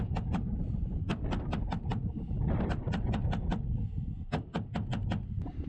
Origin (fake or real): real